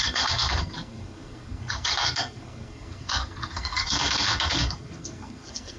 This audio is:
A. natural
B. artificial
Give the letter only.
B